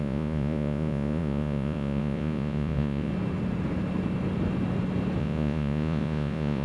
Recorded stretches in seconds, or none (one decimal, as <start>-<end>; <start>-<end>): 3.1-5.2